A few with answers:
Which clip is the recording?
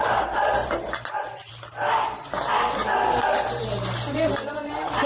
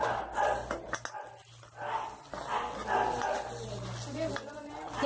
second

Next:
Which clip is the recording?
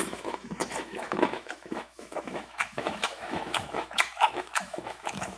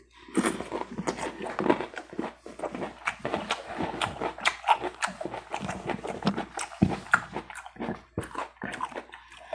second